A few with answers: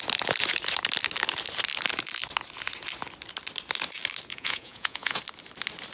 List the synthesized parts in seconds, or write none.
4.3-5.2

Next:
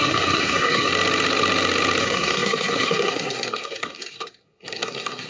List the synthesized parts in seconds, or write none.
0.0-0.9; 2.0-5.3

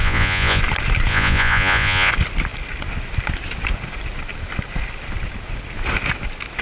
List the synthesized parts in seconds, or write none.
0.0-0.6; 1.1-2.1

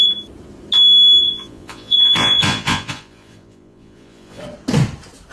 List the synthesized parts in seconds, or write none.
1.2-4.4

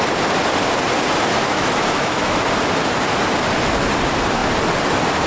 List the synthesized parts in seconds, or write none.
1.4-2.4

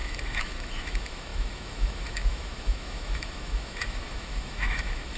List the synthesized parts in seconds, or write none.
0.0-5.2